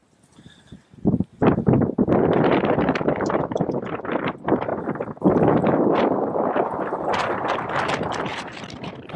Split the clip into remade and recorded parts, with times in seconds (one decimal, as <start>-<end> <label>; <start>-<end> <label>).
0.0-1.6 remade; 1.6-8.3 recorded; 8.3-9.2 remade